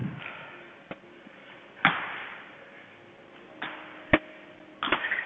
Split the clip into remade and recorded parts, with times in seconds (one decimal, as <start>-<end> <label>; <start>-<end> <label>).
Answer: 0.0-5.3 recorded